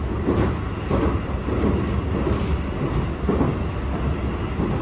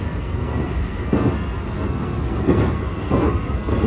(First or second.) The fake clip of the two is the second